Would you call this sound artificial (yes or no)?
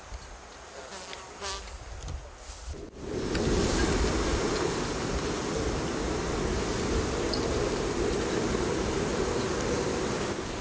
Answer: no